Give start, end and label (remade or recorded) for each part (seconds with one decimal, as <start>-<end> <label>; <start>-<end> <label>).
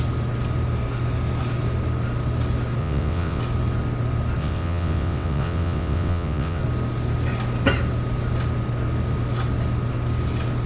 0.0-2.8 recorded; 2.8-3.4 remade; 3.4-4.4 recorded; 4.4-6.6 remade; 6.6-10.7 recorded